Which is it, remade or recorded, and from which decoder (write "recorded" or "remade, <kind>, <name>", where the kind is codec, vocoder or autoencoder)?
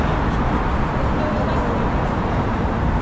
recorded